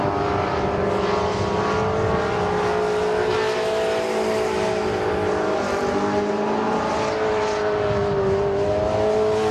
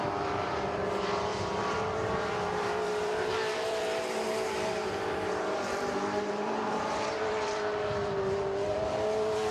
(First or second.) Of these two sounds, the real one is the first